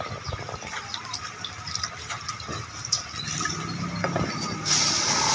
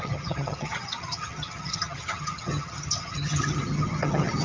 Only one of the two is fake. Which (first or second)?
second